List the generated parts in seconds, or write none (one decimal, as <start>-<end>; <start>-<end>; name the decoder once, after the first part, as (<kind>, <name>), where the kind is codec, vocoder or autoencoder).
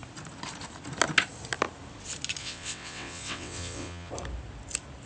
2.4-4.1 (vocoder, WaveNeXt)